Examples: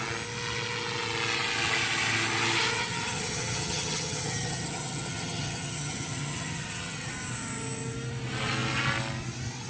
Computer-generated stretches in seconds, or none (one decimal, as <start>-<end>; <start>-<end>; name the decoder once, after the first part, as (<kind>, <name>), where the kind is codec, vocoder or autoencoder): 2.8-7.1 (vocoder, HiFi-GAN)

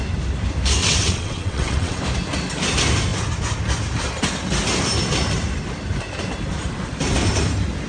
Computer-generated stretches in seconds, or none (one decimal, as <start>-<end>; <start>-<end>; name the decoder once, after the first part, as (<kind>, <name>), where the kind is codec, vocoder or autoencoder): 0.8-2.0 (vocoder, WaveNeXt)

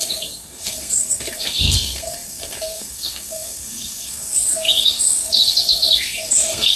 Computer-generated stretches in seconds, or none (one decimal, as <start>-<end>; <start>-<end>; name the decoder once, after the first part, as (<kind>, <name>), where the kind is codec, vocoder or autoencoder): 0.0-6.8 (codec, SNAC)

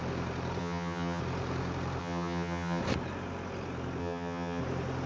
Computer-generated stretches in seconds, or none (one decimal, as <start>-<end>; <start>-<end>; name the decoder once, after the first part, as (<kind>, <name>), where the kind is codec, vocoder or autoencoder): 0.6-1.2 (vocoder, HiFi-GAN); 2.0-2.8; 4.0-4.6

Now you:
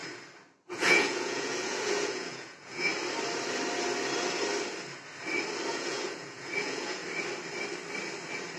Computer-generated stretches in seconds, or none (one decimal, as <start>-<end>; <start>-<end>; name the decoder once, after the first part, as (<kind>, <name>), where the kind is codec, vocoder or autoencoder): 0.7-2.9 (vocoder, Vocos); 5.7-7.0